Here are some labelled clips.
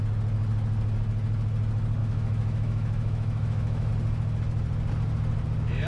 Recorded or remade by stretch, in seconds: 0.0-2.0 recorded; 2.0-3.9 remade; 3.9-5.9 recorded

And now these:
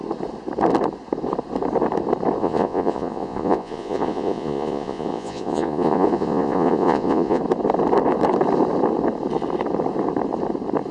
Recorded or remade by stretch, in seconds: 0.0-2.4 recorded; 2.4-7.4 remade; 7.4-10.9 recorded

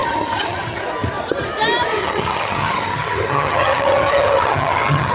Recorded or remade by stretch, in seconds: 0.0-0.8 remade; 0.8-2.0 recorded; 2.0-5.1 remade

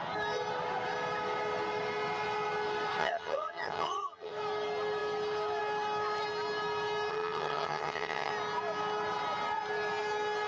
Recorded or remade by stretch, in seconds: 0.0-3.0 recorded; 3.0-4.3 remade; 4.3-7.1 recorded; 7.1-8.3 remade; 8.3-10.5 recorded

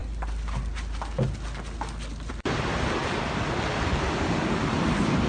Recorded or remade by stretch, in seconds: 0.0-5.3 recorded

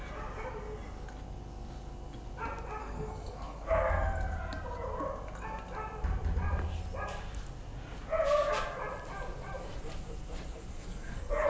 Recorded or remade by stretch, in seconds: 0.0-2.8 recorded; 2.8-3.7 remade; 3.7-10.7 recorded; 10.7-11.5 remade

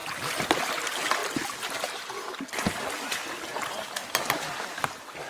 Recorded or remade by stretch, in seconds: 0.0-5.3 recorded

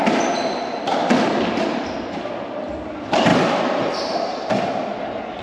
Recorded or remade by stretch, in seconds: 0.0-3.3 recorded; 3.3-3.9 remade; 3.9-5.4 recorded